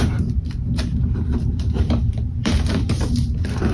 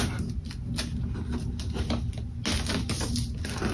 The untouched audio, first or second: second